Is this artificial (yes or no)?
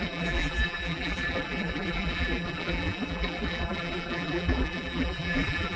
yes